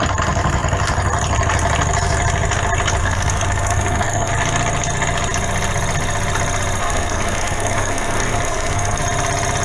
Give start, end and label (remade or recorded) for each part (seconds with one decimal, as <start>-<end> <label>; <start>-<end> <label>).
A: 0.0-3.0 recorded; 3.0-4.3 remade; 4.3-6.8 recorded; 6.8-9.0 remade; 9.0-9.6 recorded